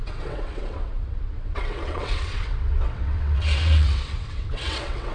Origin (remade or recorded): remade